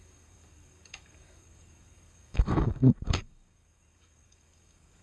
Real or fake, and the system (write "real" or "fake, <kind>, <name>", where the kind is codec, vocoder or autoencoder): fake, codec, DAC